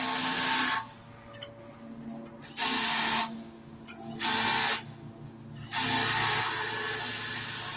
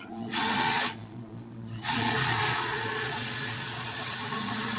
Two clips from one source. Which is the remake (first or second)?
second